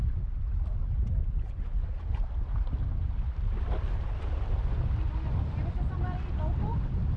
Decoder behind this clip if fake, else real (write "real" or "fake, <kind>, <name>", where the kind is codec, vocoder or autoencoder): real